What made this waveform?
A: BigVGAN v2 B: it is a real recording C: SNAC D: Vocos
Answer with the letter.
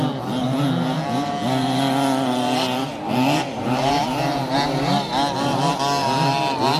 B